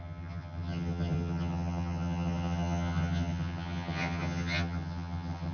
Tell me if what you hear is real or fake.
fake